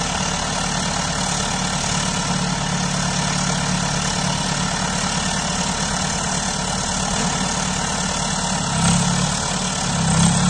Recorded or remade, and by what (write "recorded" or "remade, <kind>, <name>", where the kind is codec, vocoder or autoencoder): recorded